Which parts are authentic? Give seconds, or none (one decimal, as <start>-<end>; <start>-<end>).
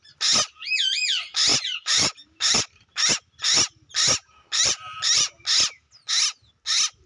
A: 0.0-1.5; 3.1-4.2; 5.3-7.1